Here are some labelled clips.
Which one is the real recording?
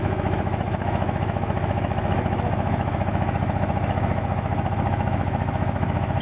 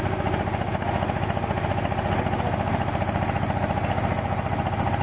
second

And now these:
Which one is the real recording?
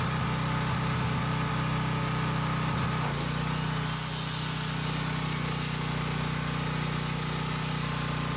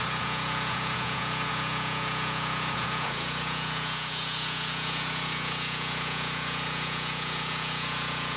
first